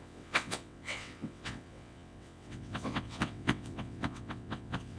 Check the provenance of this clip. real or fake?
fake